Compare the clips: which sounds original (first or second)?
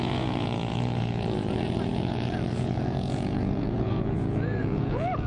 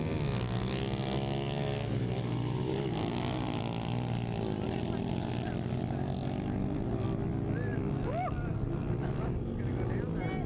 second